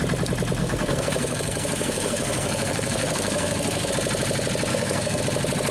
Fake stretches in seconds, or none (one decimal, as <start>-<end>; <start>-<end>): 0.6-3.9; 4.7-5.2